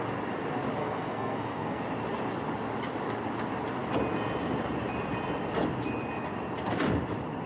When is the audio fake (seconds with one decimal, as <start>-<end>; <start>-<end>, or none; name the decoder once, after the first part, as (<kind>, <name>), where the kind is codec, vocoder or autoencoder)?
0.8-1.8 (codec, SNAC)